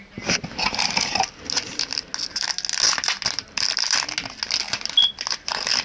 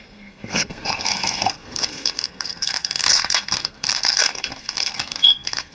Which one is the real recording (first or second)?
first